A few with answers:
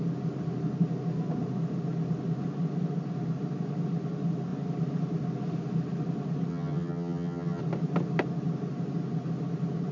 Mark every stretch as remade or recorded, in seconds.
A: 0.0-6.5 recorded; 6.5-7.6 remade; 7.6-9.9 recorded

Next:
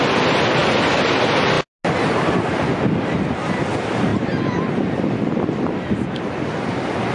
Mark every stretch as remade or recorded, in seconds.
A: 0.0-7.1 recorded

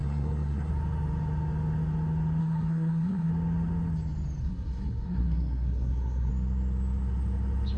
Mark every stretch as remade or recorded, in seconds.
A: 0.0-0.7 remade; 0.7-2.4 recorded; 2.4-3.3 remade; 3.3-4.4 recorded; 4.4-6.3 remade; 6.3-7.8 recorded

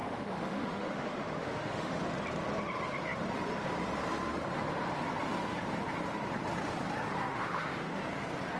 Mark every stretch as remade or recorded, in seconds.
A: 0.0-2.0 remade; 2.0-7.3 recorded; 7.3-8.0 remade; 8.0-8.6 recorded

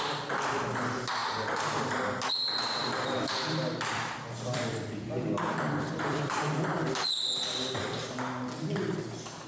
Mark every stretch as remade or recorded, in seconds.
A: 0.0-2.8 recorded; 2.8-6.8 remade; 6.8-9.5 recorded